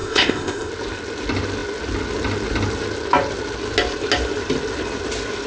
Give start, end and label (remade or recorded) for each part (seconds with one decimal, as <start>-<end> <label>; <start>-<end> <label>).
0.0-0.7 remade; 0.7-5.5 recorded